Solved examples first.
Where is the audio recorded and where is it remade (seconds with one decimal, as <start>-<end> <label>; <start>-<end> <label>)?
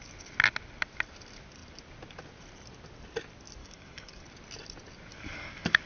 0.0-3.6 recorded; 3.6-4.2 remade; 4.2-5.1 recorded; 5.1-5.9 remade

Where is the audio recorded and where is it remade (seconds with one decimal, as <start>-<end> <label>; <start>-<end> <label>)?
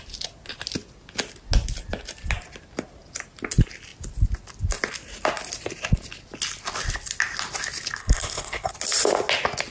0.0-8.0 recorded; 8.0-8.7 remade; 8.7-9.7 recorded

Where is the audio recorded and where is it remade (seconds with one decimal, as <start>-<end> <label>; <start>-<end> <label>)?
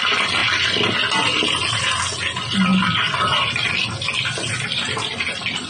0.0-5.7 recorded